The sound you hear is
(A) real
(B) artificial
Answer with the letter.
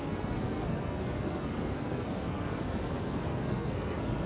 B